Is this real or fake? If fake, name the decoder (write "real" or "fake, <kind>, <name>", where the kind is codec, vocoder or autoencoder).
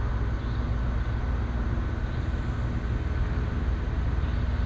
real